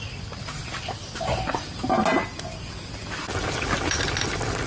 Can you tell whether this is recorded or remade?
recorded